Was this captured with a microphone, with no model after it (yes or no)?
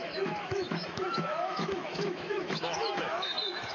no